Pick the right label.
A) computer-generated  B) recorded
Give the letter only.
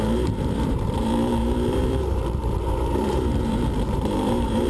A